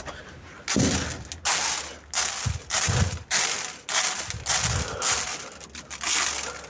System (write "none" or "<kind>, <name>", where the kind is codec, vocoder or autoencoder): none